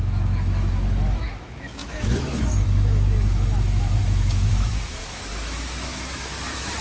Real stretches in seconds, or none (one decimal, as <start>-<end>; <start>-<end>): none

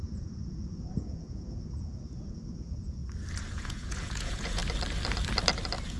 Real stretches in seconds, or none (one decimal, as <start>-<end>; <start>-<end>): 3.0-3.5; 4.6-6.0

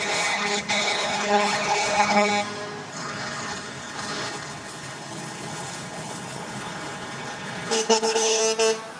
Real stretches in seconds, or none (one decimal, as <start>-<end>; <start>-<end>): 2.3-2.9; 8.4-9.0